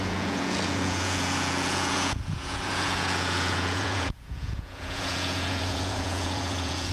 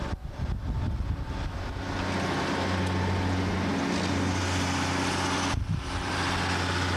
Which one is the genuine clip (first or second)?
second